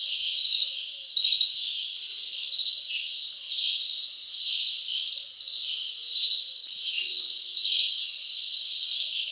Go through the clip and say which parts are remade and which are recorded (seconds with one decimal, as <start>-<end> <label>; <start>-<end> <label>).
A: 0.0-9.3 recorded

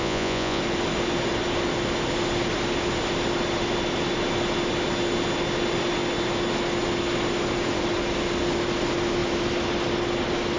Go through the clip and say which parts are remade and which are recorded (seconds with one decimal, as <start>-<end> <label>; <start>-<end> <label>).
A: 0.0-0.6 remade; 0.6-10.6 recorded

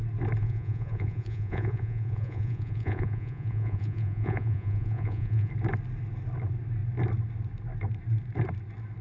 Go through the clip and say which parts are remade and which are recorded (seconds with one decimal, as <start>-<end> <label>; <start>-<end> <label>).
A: 0.0-0.4 recorded; 0.4-5.5 remade; 5.5-9.0 recorded

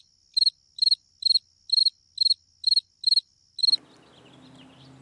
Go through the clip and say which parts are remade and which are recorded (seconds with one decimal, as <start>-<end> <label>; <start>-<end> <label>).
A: 0.0-5.0 recorded

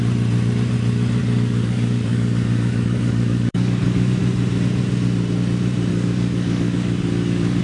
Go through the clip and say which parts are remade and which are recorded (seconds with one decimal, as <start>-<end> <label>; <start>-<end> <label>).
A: 0.0-1.2 recorded; 1.2-4.2 remade; 4.2-5.9 recorded; 5.9-7.6 remade

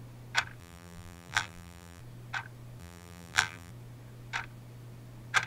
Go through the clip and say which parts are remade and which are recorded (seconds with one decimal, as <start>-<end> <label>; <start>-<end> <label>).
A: 0.0-0.6 recorded; 0.6-2.0 remade; 2.0-2.8 recorded; 2.8-3.7 remade; 3.7-5.5 recorded

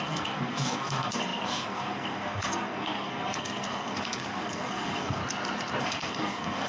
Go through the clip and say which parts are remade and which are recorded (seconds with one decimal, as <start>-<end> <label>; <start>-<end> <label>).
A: 0.0-5.2 remade; 5.2-5.8 recorded; 5.8-6.7 remade